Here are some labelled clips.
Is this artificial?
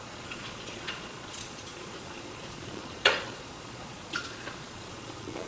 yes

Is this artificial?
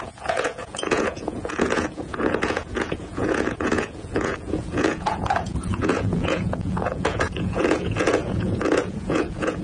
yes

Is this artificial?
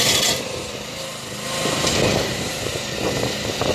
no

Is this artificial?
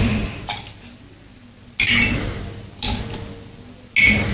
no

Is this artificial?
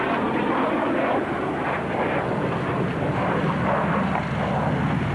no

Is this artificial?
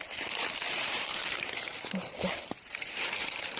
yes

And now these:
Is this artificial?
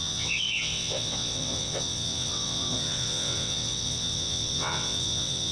yes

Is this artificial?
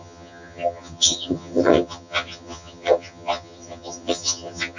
yes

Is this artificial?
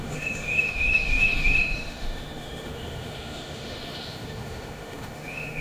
yes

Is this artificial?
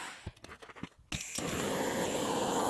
no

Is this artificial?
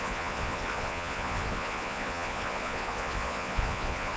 yes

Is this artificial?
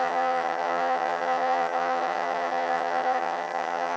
yes